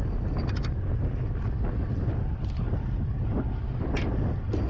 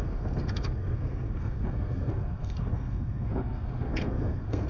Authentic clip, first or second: first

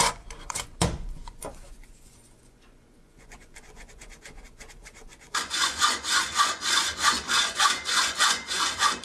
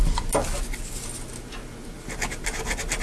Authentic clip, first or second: second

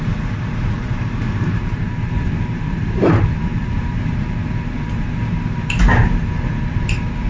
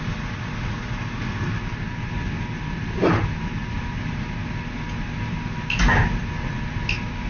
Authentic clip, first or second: second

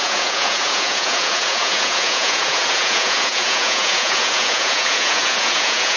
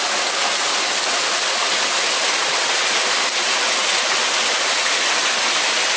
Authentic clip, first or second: second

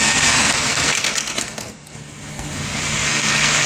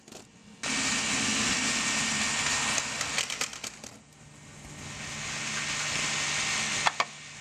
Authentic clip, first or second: second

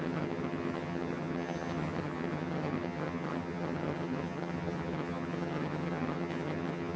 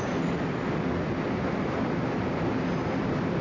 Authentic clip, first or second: second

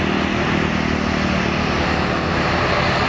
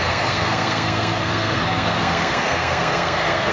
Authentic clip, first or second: first